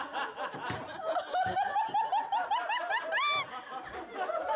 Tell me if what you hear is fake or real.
real